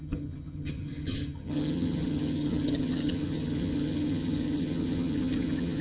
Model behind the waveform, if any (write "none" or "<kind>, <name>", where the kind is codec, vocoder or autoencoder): vocoder, HiFi-GAN